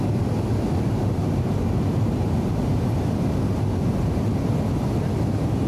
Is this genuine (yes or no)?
yes